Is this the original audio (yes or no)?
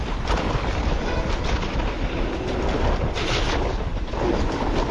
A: yes